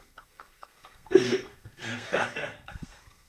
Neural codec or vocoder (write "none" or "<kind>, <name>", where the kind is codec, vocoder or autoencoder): codec, SNAC